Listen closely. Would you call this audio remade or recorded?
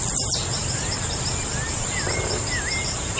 recorded